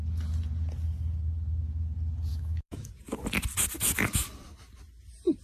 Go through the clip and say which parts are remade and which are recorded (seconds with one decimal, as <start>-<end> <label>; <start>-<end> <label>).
0.0-2.3 recorded; 2.3-2.9 remade; 2.9-5.4 recorded